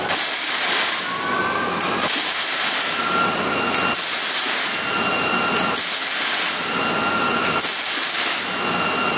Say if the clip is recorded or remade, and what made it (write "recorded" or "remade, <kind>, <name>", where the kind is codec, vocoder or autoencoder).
recorded